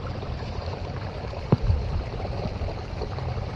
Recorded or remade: recorded